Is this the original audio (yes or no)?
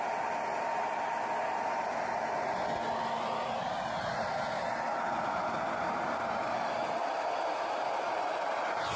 yes